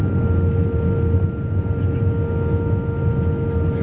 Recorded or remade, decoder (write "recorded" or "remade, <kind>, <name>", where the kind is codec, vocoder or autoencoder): recorded